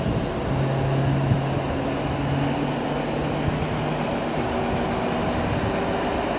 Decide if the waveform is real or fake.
real